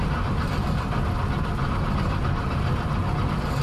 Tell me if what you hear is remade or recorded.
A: recorded